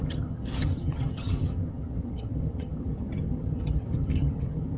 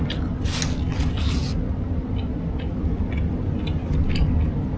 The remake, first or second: first